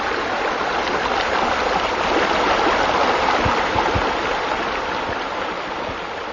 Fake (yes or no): no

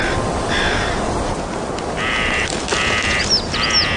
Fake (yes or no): no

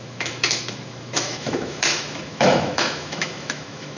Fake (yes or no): yes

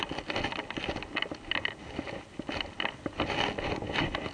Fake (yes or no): no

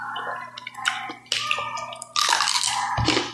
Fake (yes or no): no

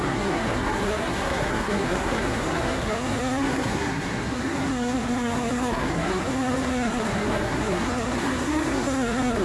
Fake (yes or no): yes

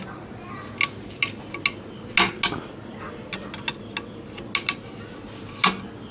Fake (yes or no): no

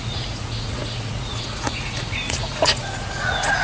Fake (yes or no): yes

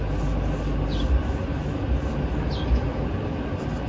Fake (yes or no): no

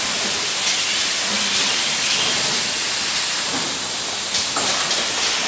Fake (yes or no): no